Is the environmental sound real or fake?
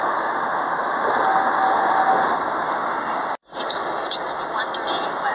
real